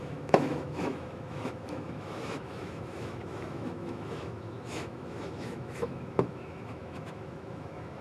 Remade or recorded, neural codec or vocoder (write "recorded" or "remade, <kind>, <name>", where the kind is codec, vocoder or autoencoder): remade, autoencoder, DAC-VAE